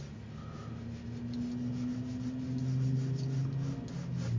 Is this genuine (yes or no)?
yes